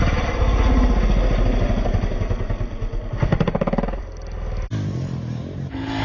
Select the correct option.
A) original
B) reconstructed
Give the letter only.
A